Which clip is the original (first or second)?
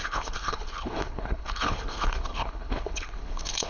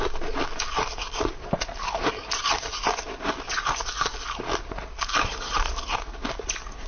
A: second